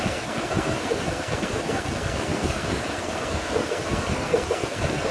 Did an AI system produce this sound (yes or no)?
yes